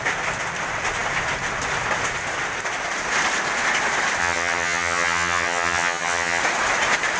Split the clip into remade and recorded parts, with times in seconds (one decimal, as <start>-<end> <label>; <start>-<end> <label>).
0.0-4.2 recorded; 4.2-6.4 remade; 6.4-7.2 recorded